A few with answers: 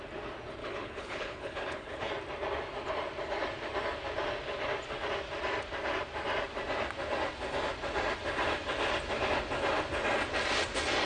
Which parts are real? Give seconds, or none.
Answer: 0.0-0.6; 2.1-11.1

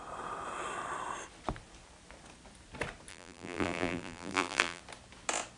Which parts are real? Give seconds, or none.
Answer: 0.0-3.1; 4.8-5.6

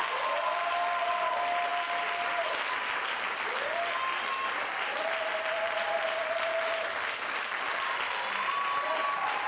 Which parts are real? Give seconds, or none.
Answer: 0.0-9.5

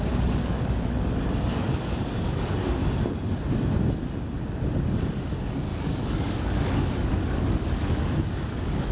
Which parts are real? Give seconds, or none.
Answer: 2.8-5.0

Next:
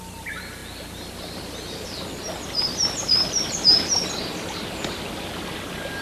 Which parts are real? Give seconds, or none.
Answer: 0.0-6.0

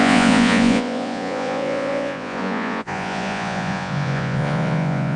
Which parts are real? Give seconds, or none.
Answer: none

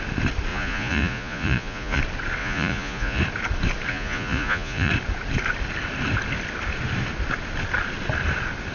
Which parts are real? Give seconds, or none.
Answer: 0.0-0.5; 2.0-2.4; 3.2-3.9; 4.9-8.7